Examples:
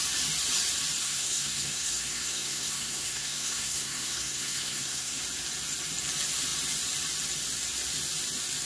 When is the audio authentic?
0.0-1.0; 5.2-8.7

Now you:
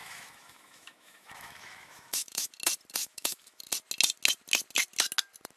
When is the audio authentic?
2.5-3.0; 3.6-5.6